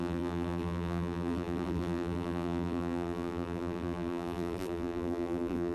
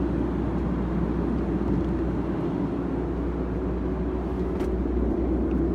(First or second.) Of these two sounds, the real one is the second